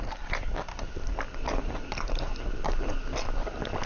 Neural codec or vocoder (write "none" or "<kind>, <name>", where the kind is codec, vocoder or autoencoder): none